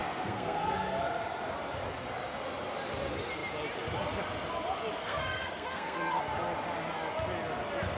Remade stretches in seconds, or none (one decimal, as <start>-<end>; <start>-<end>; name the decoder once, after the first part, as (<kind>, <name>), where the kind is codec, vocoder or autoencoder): 0.0-1.0 (codec, SNAC); 5.0-6.2